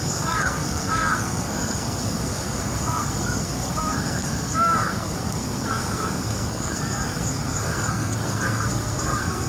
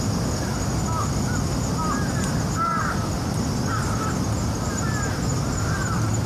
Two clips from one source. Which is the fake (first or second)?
first